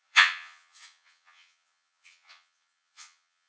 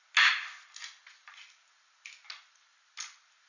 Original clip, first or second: second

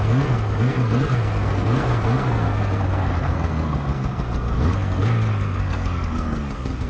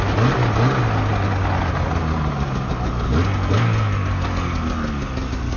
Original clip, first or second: second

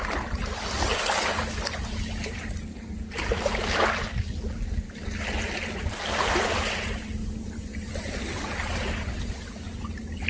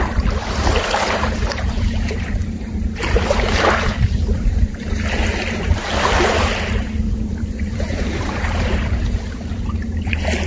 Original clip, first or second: first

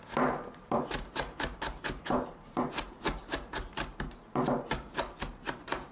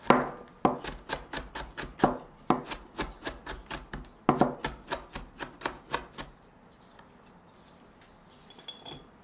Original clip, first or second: second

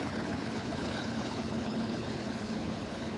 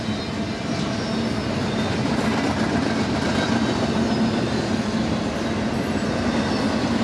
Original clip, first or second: second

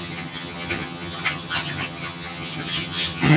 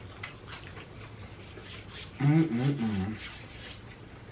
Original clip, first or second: second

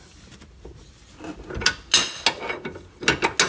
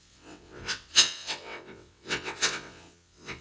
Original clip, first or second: first